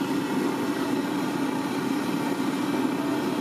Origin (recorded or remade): recorded